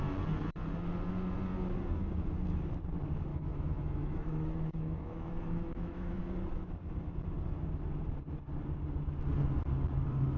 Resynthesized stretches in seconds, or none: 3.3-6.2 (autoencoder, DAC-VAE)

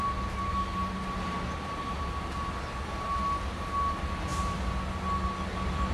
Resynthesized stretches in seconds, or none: none

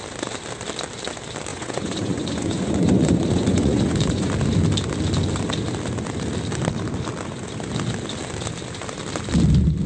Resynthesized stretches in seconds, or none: 1.5-4.3 (vocoder, Vocos)

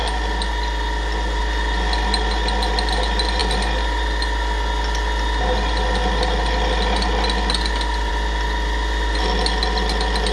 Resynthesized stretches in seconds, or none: none

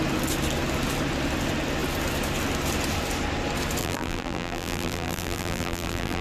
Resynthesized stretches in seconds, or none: 3.8-6.2 (vocoder, BigVGAN v2)

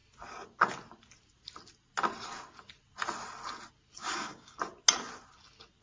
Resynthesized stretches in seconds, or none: 4.0-4.6 (codec, DAC)

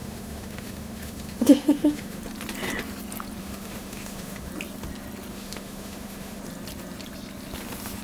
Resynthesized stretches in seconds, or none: 0.0-2.2 (autoencoder, DAC-VAE); 3.4-4.5; 5.3-6.4

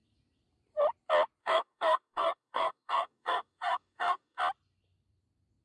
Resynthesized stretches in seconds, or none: 1.4-4.4 (codec, DAC)